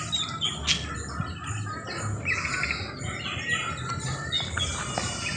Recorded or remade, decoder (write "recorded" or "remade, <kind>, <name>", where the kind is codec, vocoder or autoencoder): recorded